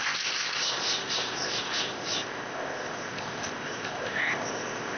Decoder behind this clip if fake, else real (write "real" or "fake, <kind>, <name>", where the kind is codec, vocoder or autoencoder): fake, codec, ZipCodec